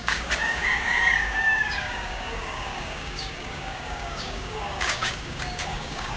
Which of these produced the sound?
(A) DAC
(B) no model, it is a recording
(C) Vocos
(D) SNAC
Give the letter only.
A